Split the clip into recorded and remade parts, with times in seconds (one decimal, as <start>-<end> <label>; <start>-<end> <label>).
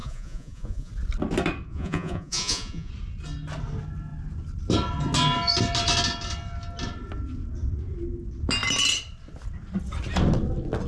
0.0-0.9 remade; 0.9-1.7 recorded; 1.7-2.9 remade; 2.9-10.9 recorded